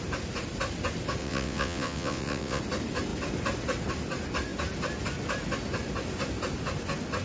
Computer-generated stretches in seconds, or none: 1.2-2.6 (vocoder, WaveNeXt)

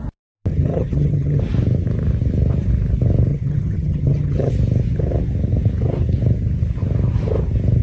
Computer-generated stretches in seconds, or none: 0.5-1.4 (vocoder, HiFi-GAN); 3.3-4.5

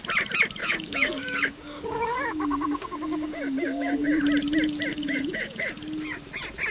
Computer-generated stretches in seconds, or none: 0.6-4.2 (codec, DAC); 4.9-5.7

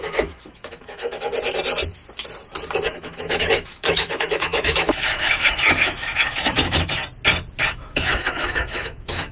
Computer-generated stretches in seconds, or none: 0.0-1.3 (autoencoder, DAC-VAE); 2.9-7.0; 7.7-9.3

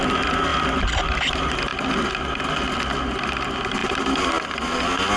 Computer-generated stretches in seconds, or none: none

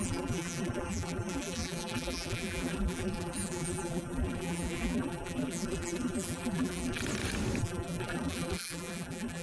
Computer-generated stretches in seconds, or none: 0.0-7.0 (vocoder, BigVGAN v2); 7.6-9.4

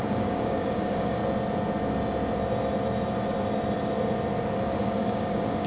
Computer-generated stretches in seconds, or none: 0.0-1.2 (codec, DAC); 4.6-5.7

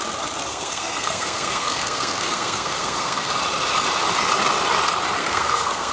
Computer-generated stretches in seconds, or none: 0.5-3.3 (codec, SNAC); 5.2-5.9